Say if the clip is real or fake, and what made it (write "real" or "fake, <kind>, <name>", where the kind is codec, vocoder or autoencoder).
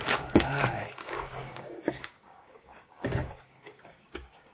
fake, codec, DAC